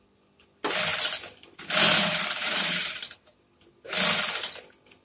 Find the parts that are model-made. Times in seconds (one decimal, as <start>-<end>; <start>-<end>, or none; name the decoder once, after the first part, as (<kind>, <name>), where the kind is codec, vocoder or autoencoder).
2.4-3.1 (vocoder, Vocos)